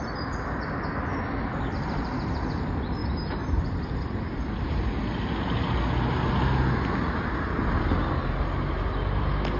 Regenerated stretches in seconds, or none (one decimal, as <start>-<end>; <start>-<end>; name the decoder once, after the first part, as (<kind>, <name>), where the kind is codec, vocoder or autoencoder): none